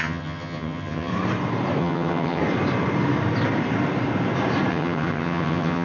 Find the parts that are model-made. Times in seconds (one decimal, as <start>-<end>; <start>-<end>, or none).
0.0-1.1; 1.8-2.4; 4.7-5.8